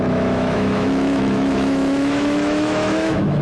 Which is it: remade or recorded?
remade